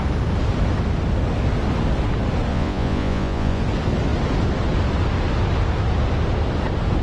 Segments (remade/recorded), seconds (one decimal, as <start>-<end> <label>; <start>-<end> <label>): 0.0-2.5 recorded; 2.5-3.6 remade; 3.6-7.0 recorded